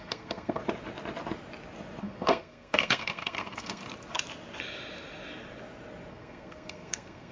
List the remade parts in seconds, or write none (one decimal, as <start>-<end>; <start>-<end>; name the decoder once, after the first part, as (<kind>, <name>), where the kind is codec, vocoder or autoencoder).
0.0-0.6 (codec, SNAC); 2.0-3.8; 6.1-7.3